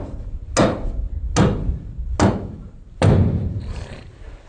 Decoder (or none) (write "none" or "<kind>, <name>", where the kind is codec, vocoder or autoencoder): none